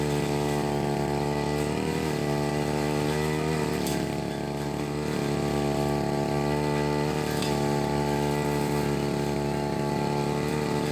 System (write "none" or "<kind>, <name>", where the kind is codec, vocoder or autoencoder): none